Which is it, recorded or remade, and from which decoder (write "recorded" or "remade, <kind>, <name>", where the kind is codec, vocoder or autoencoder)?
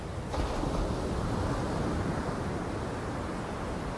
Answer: recorded